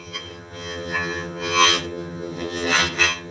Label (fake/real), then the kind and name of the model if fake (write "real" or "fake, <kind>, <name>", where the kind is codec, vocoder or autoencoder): fake, vocoder, HiFi-GAN